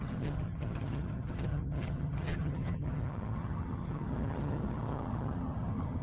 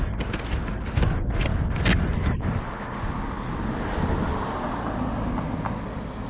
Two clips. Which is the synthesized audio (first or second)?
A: first